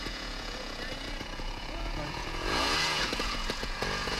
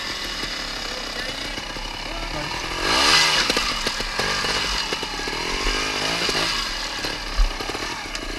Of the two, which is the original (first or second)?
second